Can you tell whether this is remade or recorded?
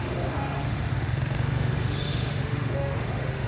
remade